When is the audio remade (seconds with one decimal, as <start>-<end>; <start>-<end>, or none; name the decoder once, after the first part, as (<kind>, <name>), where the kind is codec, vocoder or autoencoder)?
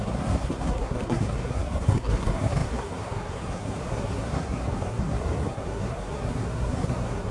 0.0-7.3 (codec, SNAC)